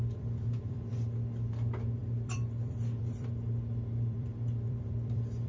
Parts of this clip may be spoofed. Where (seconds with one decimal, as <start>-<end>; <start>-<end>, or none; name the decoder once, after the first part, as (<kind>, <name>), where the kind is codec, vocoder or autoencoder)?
0.0-5.5 (vocoder, BigVGAN v2)